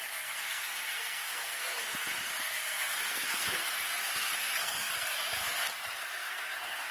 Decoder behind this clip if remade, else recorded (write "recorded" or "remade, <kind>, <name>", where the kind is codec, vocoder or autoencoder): remade, codec, SNAC